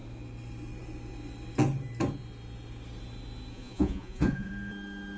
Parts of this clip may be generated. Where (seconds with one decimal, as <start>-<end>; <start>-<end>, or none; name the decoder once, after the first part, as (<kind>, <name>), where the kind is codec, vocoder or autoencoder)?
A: 3.5-4.5 (vocoder, Vocos)